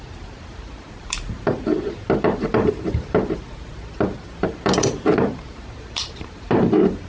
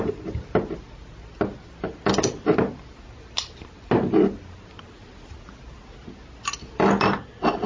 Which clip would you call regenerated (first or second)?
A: first